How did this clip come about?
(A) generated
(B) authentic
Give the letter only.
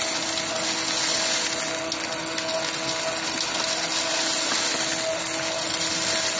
B